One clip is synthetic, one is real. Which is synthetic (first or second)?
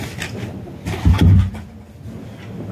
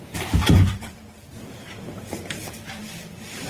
second